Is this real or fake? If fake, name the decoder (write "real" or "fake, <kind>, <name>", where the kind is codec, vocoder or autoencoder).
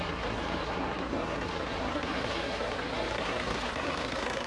fake, codec, SNAC